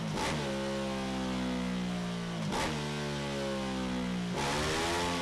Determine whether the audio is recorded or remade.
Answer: recorded